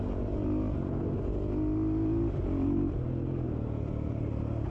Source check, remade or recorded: recorded